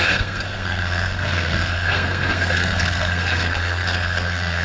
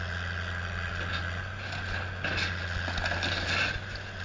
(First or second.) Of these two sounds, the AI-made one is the first